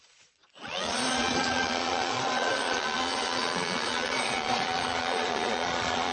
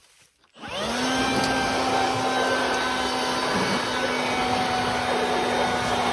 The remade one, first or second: first